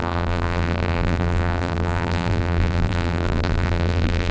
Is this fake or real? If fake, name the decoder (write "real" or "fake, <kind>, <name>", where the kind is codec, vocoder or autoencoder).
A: fake, vocoder, BigVGAN v2